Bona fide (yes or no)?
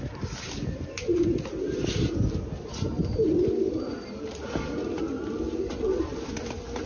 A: yes